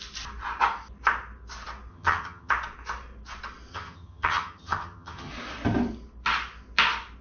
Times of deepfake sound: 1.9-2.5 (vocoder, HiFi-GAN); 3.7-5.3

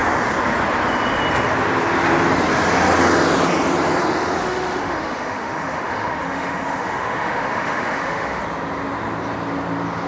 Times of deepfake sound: 4.4-8.4 (autoencoder, DAC-VAE)

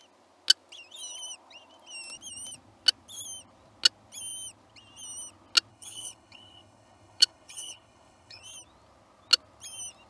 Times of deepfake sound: 5.7-8.4 (codec, HILCodec)

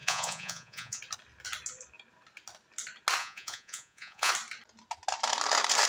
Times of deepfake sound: 0.0-1.0 (vocoder, Vocos); 3.2-4.3

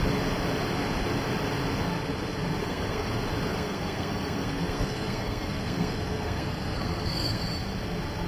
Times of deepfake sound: 2.6-3.1 (codec, SNAC); 3.5-7.4